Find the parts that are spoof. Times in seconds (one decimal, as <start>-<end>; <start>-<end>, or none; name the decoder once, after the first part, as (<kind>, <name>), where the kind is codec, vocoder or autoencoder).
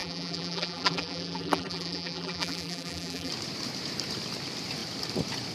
0.0-3.3 (vocoder, BigVGAN v2)